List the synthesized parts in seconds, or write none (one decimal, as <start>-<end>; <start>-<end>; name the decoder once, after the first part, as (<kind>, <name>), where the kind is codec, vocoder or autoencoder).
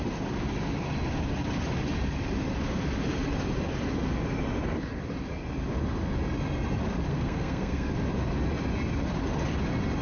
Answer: 7.1-7.9 (codec, SNAC)